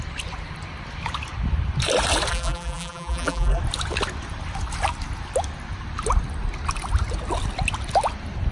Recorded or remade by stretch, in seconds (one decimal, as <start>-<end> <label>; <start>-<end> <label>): 0.0-2.3 recorded; 2.3-3.6 remade; 3.6-8.5 recorded